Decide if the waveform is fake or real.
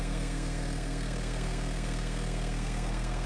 fake